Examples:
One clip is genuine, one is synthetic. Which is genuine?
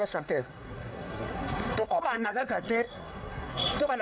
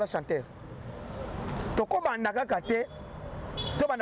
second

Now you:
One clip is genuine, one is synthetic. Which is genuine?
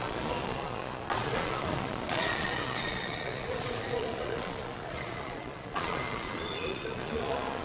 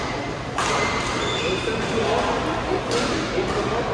second